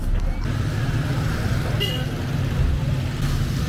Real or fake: real